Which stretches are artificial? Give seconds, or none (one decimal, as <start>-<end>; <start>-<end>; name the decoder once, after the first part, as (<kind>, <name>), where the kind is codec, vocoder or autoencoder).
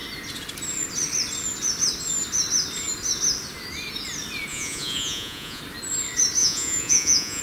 4.5-5.6 (vocoder, Vocos); 6.4-7.4